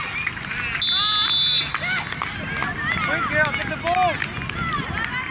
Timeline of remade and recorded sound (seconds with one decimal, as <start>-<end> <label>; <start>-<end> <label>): 0.0-5.3 recorded